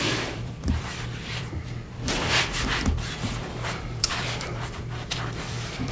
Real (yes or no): no